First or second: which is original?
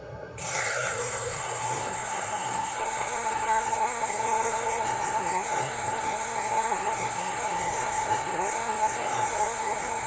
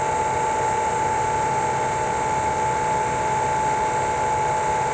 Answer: second